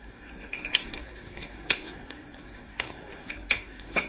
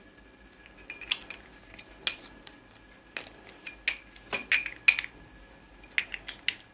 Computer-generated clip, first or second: first